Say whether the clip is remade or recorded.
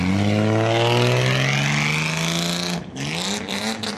recorded